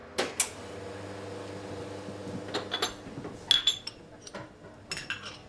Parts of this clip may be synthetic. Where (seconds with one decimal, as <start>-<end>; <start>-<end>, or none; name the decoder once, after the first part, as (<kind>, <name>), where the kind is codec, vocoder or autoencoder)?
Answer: none